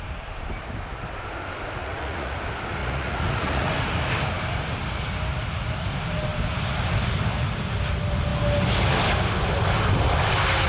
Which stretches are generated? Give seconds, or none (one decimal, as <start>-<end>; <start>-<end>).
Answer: 1.8-2.4; 2.8-3.7

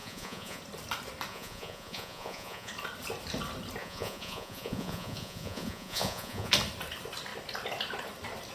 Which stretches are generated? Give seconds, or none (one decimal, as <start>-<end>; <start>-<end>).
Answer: 0.0-0.6; 1.3-2.7; 3.8-6.5

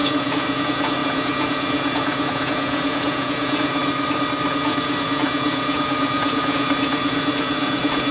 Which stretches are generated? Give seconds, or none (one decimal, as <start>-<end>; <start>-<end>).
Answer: 0.0-3.8; 4.5-8.1

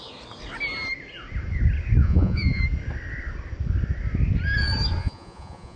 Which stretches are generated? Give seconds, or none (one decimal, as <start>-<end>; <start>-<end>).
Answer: 2.0-2.6; 5.0-5.8

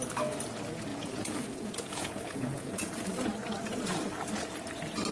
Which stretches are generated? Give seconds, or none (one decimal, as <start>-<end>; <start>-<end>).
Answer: 0.9-2.9

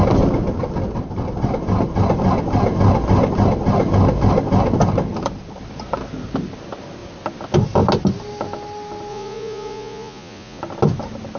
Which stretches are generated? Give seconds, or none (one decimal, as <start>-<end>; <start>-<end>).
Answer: 9.1-10.6

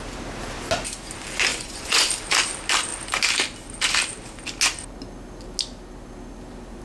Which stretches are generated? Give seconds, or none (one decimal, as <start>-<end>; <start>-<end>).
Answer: 1.5-2.0

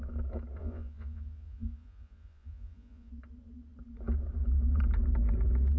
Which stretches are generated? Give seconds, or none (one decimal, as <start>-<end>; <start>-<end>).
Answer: 0.6-3.1